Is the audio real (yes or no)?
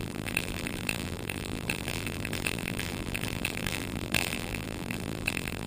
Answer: no